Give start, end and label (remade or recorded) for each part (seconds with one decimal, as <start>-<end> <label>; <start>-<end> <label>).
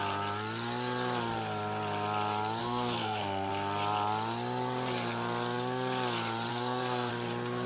0.0-2.6 recorded; 2.6-3.5 remade; 3.5-6.5 recorded; 6.5-7.1 remade; 7.1-7.7 recorded